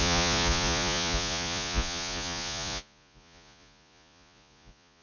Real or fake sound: fake